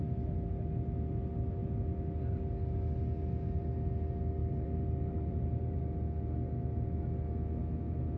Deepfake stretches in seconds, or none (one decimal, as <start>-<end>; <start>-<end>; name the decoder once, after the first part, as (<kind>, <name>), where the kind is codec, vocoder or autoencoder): 4.4-5.8 (vocoder, BigVGAN v2)